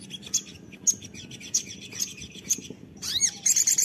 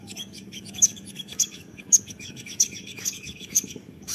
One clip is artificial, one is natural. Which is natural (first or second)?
first